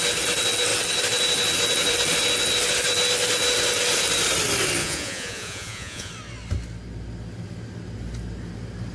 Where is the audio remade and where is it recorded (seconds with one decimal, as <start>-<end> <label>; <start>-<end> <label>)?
0.0-4.8 recorded; 4.8-6.1 remade; 6.1-8.9 recorded